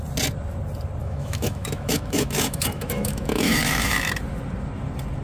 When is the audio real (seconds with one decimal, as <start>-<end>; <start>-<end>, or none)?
0.0-1.0; 4.1-5.2